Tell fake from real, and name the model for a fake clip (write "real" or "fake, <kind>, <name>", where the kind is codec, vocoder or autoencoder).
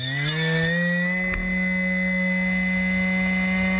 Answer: real